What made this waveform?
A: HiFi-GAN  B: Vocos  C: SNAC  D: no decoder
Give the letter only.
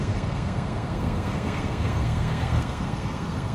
C